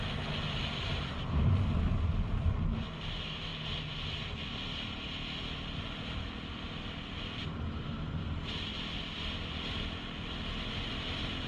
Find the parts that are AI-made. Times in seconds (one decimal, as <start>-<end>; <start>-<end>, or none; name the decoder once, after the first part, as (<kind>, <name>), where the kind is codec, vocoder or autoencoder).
none